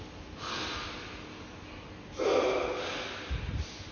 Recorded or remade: recorded